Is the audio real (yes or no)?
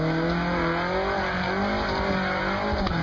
yes